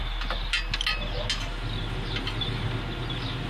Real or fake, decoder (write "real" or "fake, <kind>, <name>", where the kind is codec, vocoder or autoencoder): real